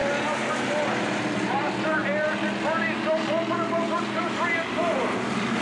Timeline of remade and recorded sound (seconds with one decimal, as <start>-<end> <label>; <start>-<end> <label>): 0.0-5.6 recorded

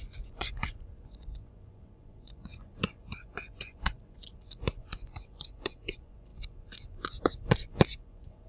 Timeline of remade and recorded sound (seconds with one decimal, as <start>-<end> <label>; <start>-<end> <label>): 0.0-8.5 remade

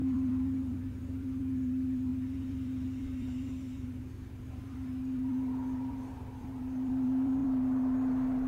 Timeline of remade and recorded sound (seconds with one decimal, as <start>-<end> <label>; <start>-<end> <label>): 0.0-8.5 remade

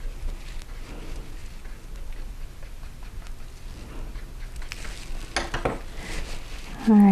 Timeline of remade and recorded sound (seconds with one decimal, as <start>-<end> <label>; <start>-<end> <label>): 0.0-7.1 recorded

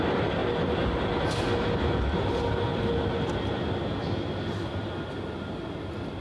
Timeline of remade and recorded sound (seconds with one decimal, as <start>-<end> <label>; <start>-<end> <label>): 0.0-6.2 recorded